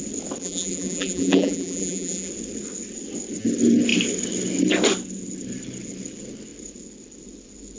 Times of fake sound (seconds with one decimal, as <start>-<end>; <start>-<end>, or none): 0.4-2.3